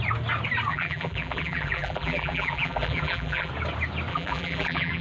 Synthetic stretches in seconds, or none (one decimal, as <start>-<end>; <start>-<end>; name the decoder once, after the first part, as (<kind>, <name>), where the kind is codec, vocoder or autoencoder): 0.7-3.5 (vocoder, BigVGAN v2); 4.1-5.0